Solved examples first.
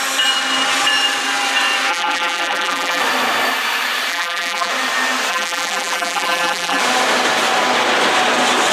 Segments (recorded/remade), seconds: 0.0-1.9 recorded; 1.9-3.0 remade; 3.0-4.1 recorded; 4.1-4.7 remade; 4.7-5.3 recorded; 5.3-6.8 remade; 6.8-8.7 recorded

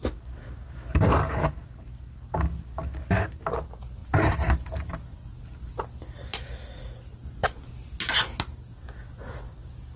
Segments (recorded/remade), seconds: 0.0-10.0 recorded